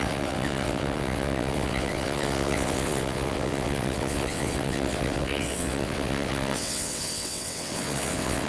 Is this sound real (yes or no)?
no